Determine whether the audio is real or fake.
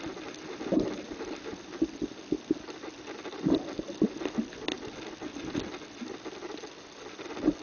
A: real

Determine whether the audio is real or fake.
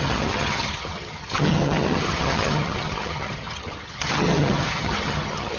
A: fake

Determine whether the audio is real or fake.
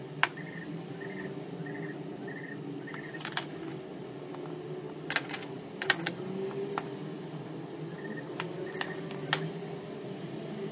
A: real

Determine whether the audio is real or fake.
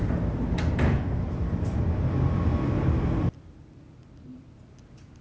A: real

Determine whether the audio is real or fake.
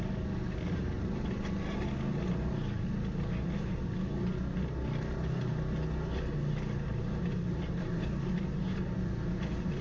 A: real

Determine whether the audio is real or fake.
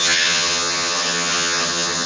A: fake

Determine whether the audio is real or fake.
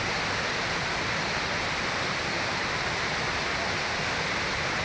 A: real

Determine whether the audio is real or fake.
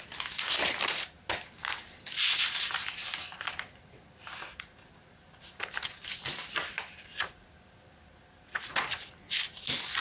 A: real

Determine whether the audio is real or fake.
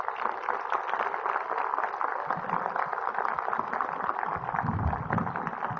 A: real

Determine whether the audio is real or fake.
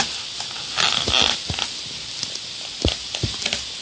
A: real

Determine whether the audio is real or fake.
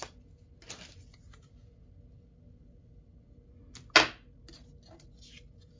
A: real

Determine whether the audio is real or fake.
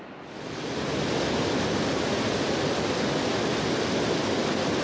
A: real